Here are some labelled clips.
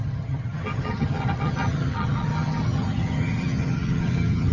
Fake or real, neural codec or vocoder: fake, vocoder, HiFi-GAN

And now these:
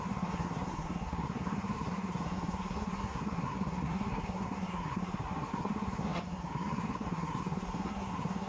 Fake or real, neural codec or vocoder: fake, codec, SNAC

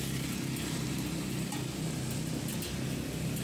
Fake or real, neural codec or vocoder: real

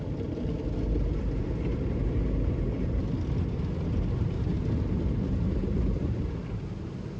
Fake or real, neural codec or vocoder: real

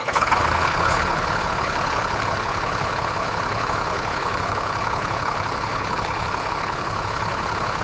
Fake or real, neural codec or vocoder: fake, codec, HILCodec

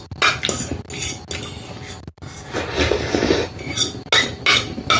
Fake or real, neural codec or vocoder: real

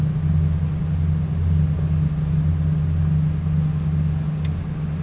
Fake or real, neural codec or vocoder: real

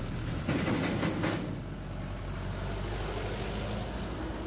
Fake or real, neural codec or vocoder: real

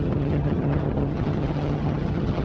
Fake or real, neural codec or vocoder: fake, vocoder, HiFi-GAN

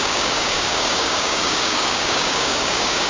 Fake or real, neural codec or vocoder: fake, codec, DAC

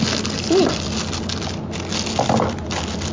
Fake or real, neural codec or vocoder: real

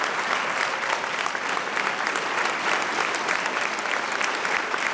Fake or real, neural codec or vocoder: real